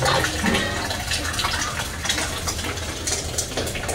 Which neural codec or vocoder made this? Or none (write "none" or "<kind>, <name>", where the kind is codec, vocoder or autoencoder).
none